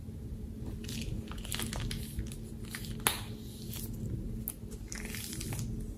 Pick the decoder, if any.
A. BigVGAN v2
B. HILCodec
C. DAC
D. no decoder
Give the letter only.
D